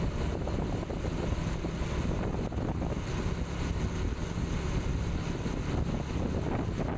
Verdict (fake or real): real